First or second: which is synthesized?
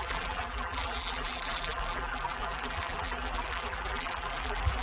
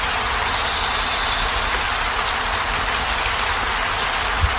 first